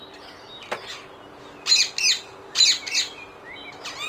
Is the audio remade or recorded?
recorded